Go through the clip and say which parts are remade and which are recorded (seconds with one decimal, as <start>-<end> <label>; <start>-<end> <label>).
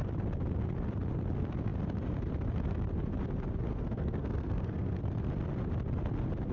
0.0-3.7 recorded; 3.7-5.0 remade; 5.0-6.5 recorded